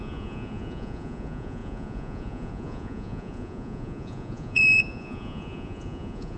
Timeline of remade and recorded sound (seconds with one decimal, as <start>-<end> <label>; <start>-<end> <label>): 0.0-6.4 remade